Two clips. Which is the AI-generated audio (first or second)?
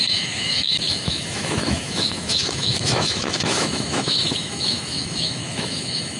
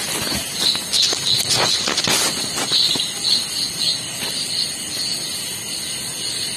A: first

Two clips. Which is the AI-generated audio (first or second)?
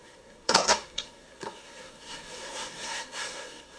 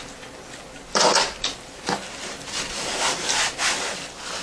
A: first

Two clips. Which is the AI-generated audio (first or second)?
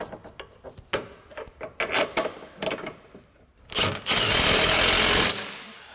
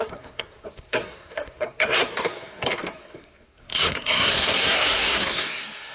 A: second